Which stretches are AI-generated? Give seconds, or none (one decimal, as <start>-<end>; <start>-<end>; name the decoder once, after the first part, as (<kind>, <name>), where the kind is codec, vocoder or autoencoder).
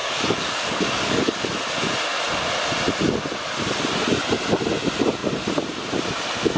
0.0-1.5 (codec, DAC)